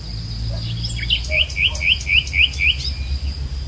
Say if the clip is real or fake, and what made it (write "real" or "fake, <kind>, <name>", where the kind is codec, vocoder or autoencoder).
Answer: real